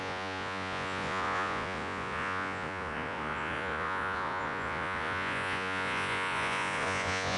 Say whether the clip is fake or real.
fake